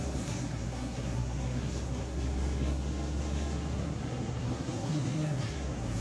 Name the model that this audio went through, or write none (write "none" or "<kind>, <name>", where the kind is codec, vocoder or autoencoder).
codec, SNAC